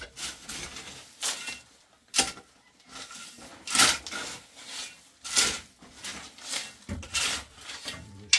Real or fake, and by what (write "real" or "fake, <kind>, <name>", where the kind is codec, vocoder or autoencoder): real